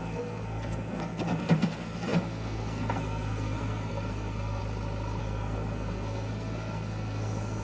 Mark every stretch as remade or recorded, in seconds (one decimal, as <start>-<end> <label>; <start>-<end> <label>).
0.0-4.6 remade; 4.6-5.2 recorded; 5.2-7.6 remade